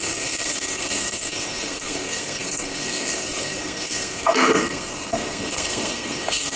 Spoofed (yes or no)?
yes